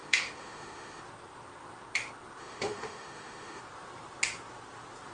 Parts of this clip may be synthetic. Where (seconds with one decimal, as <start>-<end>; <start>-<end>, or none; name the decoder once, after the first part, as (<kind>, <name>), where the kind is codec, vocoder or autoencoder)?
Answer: 0.0-1.0 (autoencoder, DAC-VAE); 2.4-3.6